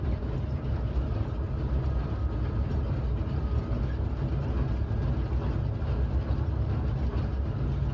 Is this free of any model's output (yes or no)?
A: yes